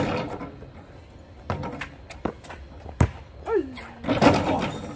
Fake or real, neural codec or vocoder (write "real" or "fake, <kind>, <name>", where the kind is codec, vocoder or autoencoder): real